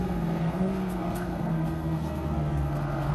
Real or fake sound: fake